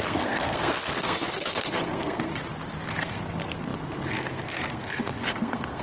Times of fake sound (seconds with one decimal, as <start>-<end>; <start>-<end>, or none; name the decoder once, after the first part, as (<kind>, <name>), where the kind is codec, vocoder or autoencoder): 0.0-2.3 (codec, SNAC); 2.9-5.8